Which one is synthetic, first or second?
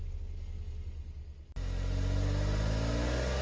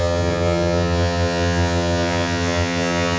second